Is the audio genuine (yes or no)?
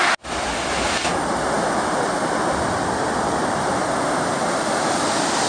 yes